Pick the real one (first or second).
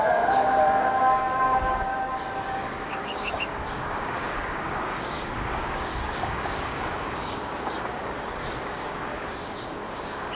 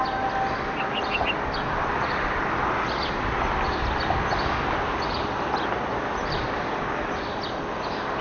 second